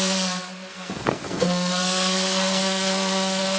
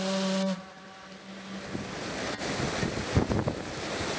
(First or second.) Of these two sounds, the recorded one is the second